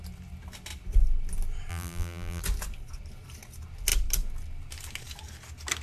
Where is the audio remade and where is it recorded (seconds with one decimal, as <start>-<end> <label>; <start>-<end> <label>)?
0.0-1.7 recorded; 1.7-2.4 remade; 2.4-5.8 recorded